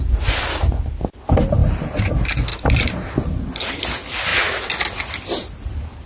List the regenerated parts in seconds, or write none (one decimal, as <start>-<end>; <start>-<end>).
1.6-2.1; 2.5-3.1